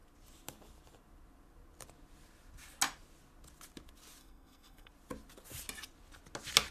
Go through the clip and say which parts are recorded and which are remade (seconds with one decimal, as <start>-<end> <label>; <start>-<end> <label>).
0.0-4.2 recorded; 4.2-4.9 remade; 4.9-6.7 recorded